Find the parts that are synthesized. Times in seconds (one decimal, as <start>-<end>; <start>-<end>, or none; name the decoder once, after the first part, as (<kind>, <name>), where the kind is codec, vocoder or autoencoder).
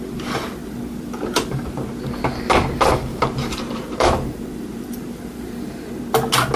3.1-6.0 (vocoder, BigVGAN v2)